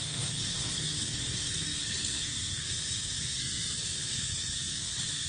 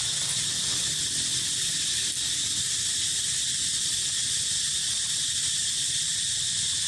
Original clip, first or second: second